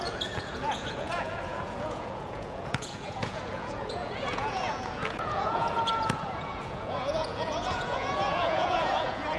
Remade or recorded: remade